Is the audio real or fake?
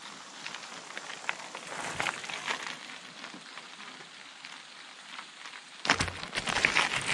real